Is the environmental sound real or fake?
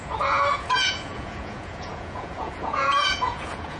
fake